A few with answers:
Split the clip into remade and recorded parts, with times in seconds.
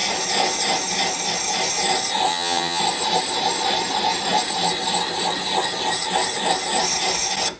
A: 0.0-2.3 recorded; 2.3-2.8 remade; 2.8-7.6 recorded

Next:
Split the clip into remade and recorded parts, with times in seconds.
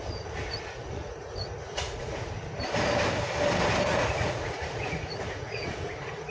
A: 0.0-0.8 recorded; 0.8-2.3 remade; 2.3-3.9 recorded; 3.9-6.3 remade